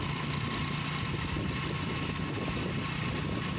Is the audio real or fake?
real